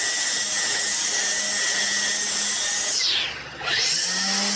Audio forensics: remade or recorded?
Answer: recorded